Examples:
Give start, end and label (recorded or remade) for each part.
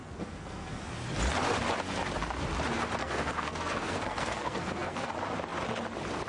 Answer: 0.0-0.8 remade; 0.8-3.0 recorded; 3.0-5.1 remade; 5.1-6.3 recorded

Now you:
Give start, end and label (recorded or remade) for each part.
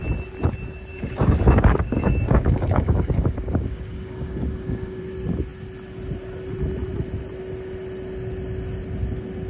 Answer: 0.0-0.9 recorded; 0.9-5.0 remade; 5.0-9.5 recorded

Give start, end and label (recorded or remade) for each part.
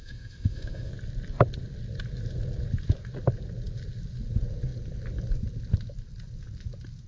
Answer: 0.0-0.9 remade; 0.9-7.1 recorded